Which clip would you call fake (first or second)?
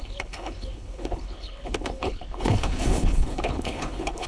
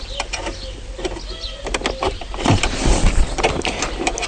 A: first